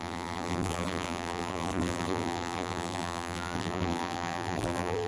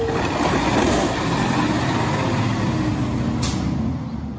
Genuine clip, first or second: second